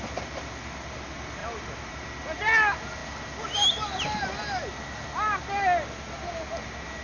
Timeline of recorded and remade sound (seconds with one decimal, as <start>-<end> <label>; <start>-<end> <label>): 0.0-7.0 recorded